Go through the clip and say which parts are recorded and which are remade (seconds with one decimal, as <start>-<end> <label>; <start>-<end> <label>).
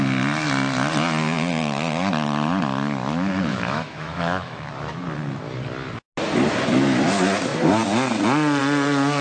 0.0-3.5 recorded; 3.5-4.7 remade; 4.7-9.2 recorded